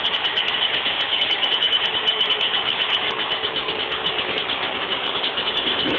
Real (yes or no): no